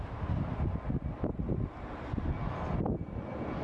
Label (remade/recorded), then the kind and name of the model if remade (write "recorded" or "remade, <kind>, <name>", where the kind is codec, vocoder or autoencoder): recorded